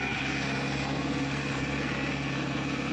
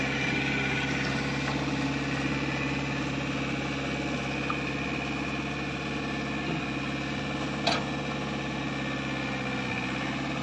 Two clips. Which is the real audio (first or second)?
second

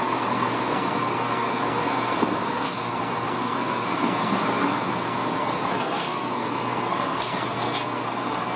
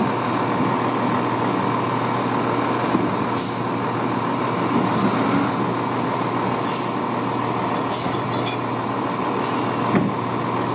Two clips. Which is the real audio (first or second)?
second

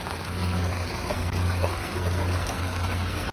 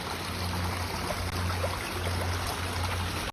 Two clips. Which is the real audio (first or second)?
second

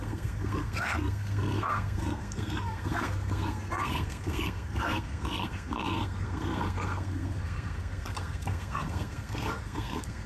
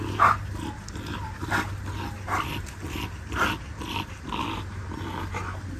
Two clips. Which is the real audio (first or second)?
second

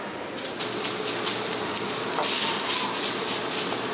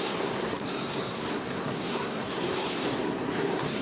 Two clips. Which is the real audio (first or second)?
first